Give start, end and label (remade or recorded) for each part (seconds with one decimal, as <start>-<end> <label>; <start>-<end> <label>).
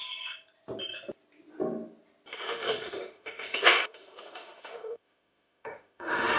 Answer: 0.0-2.3 recorded; 2.3-6.4 remade